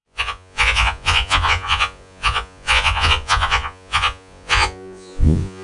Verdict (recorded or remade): remade